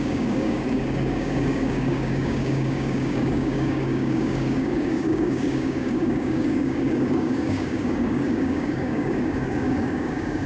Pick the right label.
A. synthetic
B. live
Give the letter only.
A